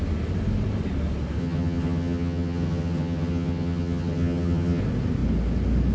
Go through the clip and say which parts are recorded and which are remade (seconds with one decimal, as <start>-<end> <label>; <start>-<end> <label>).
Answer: 0.0-1.4 recorded; 1.4-4.8 remade; 4.8-5.9 recorded